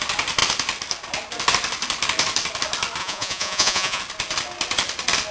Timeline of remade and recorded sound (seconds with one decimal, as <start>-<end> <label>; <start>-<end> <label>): 0.0-3.0 recorded; 3.0-4.0 remade; 4.0-5.3 recorded